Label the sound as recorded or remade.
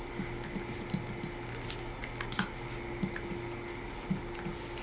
recorded